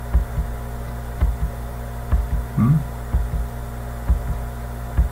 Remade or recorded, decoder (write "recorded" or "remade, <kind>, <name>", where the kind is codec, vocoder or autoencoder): recorded